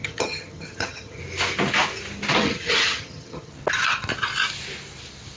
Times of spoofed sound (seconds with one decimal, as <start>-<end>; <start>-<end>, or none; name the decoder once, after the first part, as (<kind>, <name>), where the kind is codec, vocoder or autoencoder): 0.0-1.2 (vocoder, HiFi-GAN); 2.4-3.5